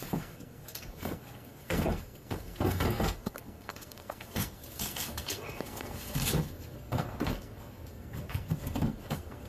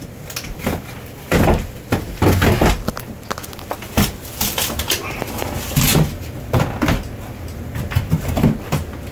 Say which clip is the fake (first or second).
first